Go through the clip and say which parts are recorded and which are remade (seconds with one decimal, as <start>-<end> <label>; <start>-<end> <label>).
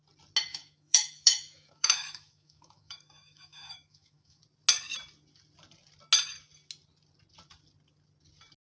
0.0-0.5 recorded; 0.5-4.4 remade; 4.4-8.6 recorded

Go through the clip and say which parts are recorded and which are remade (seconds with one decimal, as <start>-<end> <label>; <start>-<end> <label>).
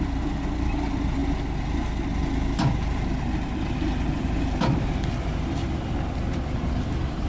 0.0-7.3 recorded